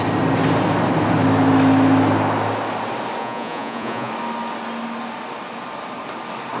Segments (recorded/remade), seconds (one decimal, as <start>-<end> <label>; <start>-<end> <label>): 0.0-3.2 recorded; 3.2-4.1 remade; 4.1-6.6 recorded